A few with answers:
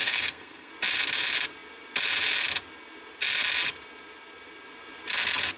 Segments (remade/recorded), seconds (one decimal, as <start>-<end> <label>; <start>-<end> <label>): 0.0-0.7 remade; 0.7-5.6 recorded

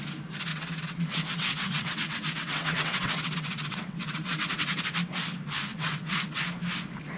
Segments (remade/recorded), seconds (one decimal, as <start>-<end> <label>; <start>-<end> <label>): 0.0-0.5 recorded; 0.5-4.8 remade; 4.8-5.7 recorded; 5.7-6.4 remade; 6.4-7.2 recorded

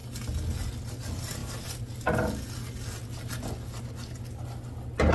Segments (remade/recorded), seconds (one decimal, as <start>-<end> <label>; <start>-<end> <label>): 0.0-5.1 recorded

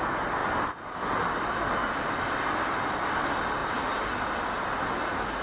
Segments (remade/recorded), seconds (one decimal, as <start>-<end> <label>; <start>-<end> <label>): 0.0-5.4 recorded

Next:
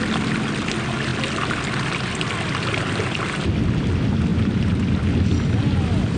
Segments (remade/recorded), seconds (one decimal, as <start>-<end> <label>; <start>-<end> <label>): 0.0-6.2 recorded